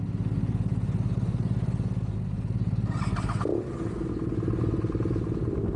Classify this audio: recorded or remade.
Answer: recorded